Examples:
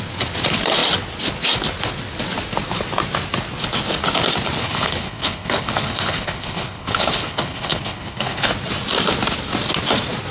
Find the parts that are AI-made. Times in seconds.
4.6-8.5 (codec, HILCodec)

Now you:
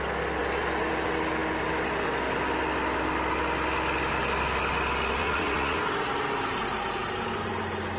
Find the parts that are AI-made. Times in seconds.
5.2-5.8 (vocoder, Vocos)

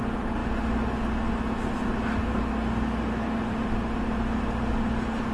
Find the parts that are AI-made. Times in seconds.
none

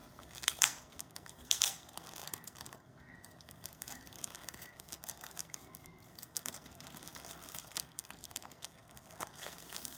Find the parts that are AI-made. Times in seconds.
0.0-10.0 (codec, SNAC)

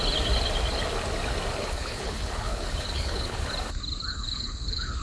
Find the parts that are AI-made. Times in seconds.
1.6-3.5 (codec, HILCodec); 4.1-5.0